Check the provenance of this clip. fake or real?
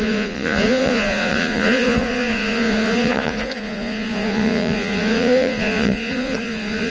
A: fake